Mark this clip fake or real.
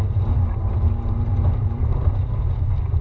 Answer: fake